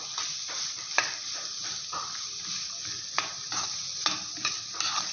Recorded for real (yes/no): yes